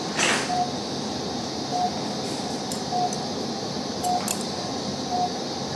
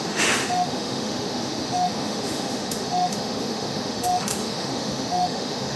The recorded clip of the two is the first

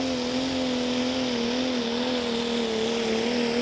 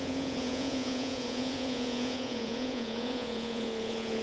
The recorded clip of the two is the first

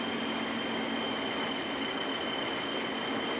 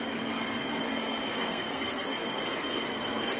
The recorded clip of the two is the first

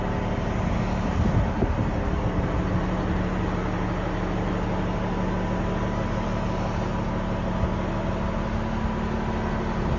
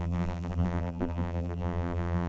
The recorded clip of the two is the first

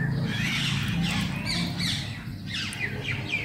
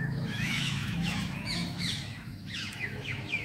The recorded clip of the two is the first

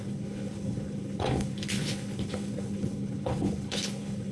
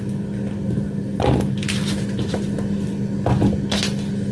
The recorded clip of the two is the second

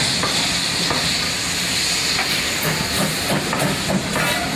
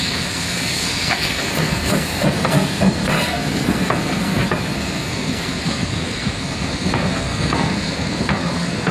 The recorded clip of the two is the first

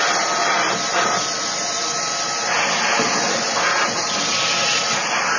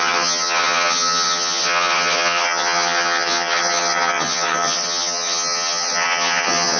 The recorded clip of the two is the first